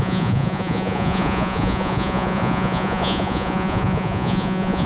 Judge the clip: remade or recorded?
remade